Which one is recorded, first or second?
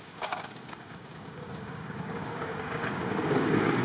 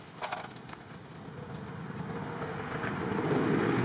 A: second